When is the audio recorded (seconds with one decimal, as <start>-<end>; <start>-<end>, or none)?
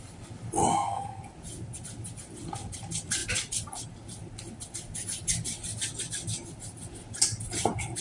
0.0-0.7; 1.2-8.0